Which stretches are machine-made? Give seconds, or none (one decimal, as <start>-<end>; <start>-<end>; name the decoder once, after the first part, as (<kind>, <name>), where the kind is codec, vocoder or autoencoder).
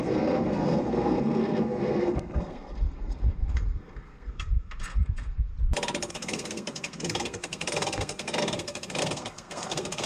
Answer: 0.0-5.5 (codec, SNAC); 6.1-10.1